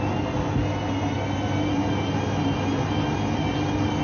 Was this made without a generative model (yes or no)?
yes